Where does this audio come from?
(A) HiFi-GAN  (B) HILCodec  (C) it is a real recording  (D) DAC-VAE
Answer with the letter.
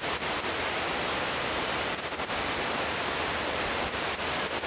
C